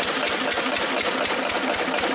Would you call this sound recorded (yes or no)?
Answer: yes